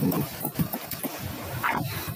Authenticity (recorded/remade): remade